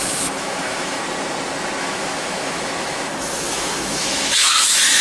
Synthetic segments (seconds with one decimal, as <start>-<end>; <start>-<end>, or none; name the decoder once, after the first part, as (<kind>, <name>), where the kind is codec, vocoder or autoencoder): 0.0-1.0 (autoencoder, DAC-VAE); 1.8-5.0